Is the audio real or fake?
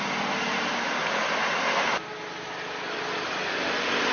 real